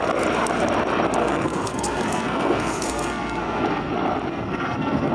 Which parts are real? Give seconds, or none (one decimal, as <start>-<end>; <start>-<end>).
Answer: 0.0-1.2; 3.9-4.3